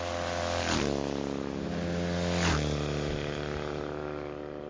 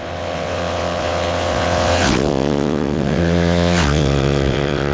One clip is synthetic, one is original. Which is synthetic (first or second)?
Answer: second